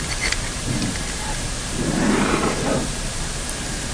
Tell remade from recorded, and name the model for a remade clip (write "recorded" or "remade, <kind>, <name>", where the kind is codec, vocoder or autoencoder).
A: remade, vocoder, BigVGAN v2